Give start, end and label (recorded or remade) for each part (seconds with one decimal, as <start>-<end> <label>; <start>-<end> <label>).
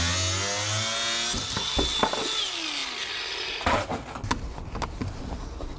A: 0.0-5.8 recorded